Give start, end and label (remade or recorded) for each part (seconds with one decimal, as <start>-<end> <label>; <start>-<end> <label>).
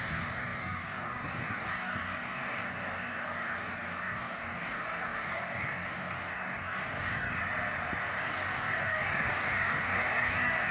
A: 0.0-7.4 remade; 7.4-8.0 recorded; 8.0-10.7 remade